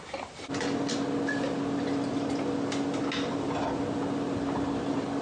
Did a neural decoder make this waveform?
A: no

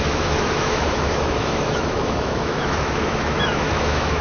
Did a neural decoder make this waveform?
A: yes